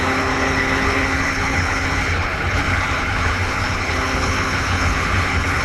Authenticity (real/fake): fake